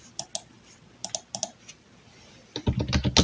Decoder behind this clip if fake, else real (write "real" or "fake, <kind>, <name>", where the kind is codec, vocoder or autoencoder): real